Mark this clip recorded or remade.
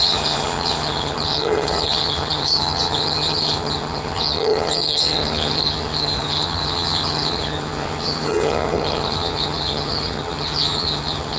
remade